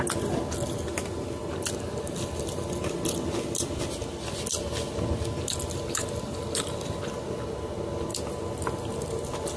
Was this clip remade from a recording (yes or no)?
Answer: no